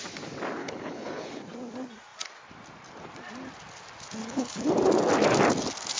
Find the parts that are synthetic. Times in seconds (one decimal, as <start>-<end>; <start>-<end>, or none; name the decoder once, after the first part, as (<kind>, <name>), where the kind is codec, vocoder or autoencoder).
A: 0.6-1.4 (codec, HILCodec); 4.2-4.7